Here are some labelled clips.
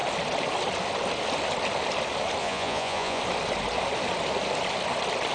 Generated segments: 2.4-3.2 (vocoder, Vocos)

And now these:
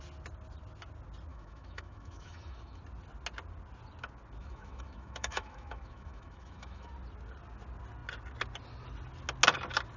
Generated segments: 1.3-2.8 (autoencoder, DAC-VAE); 4.4-6.9

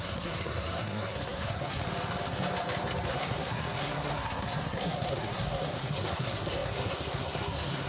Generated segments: 0.0-1.8 (codec, SNAC); 3.1-7.9

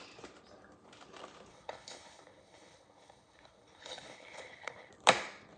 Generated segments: 1.5-4.9 (codec, HILCodec)

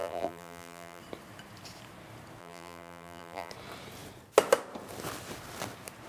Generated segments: 0.0-1.0 (vocoder, BigVGAN v2); 2.4-3.5

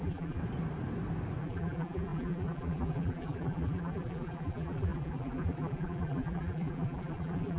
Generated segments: 0.0-0.4 (vocoder, BigVGAN v2); 1.4-7.6

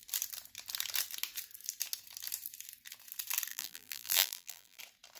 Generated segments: 3.5-4.8 (vocoder, BigVGAN v2)

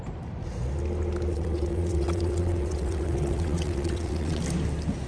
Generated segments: 1.3-4.4 (vocoder, WaveNeXt)